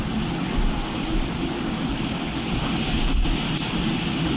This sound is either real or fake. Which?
real